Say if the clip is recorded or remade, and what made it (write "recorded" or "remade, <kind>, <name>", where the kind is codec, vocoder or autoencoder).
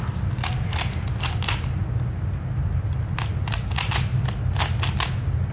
recorded